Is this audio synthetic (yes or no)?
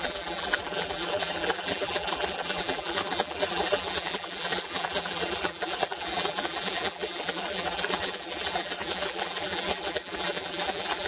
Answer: yes